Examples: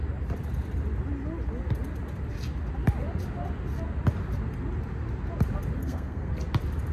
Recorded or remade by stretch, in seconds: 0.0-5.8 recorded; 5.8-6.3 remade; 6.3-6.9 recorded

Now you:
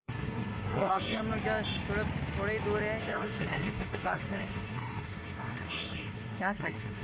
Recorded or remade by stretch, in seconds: 0.0-1.2 remade; 1.2-3.0 recorded; 3.0-7.0 remade

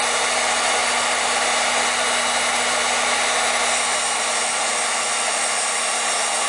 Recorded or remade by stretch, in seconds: 0.0-6.5 recorded

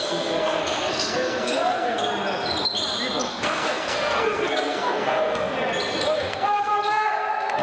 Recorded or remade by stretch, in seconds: 0.0-2.1 remade; 2.1-3.3 recorded; 3.3-5.5 remade; 5.5-6.1 recorded; 6.1-7.6 remade

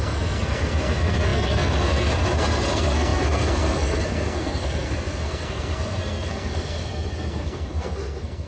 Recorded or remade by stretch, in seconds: 0.0-8.5 remade